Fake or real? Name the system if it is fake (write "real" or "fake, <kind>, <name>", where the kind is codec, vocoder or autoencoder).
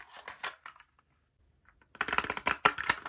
real